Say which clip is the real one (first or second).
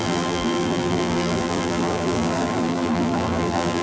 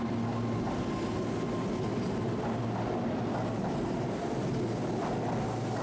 second